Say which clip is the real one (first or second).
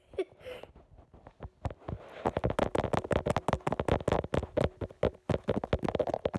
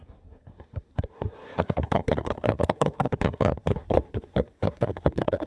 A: first